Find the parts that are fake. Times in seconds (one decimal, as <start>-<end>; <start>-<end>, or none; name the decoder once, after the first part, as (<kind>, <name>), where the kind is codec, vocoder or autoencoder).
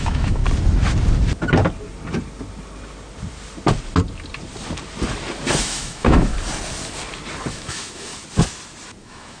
0.0-0.4 (autoencoder, DAC-VAE); 5.6-6.3; 7.5-8.1; 9.0-9.4